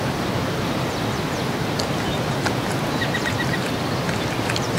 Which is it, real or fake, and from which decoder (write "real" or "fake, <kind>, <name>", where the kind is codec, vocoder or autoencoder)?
fake, vocoder, BigVGAN v2